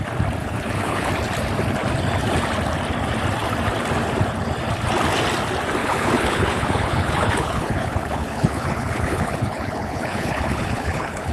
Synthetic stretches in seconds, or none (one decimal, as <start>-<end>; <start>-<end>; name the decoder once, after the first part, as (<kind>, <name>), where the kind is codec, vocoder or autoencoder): 0.4-1.1 (codec, HILCodec); 5.8-11.3